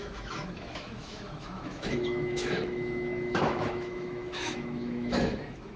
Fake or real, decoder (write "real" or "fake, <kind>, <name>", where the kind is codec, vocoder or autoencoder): fake, autoencoder, DAC-VAE